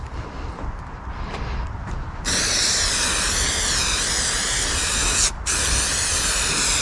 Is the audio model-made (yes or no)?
no